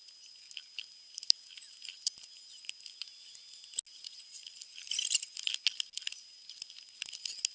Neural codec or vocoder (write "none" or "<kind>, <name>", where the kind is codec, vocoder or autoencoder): none